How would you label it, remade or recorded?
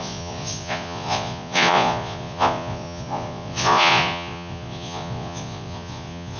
remade